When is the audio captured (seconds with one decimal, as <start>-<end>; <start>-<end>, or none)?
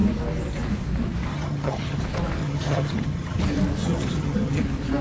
0.0-1.3; 2.0-2.4; 3.4-3.8; 4.6-5.0